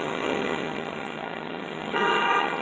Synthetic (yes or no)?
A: yes